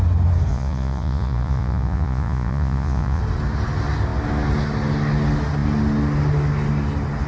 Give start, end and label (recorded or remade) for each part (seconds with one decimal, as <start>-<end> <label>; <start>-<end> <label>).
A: 0.0-0.5 recorded; 0.5-3.2 remade; 3.2-7.3 recorded